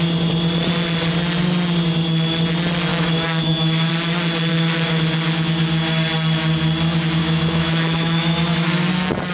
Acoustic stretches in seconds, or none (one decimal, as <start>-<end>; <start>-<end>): 0.0-2.9; 3.9-4.5; 5.0-7.2; 8.9-9.3